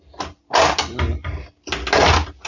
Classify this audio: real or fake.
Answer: real